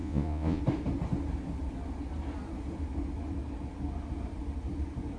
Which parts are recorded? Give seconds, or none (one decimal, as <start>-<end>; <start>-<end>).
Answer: 0.6-5.2